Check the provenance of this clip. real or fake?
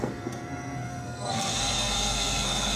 fake